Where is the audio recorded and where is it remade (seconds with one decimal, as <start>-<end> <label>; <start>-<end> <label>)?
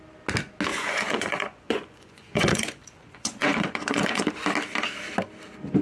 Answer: 0.0-0.7 recorded; 0.7-4.2 remade; 4.2-5.8 recorded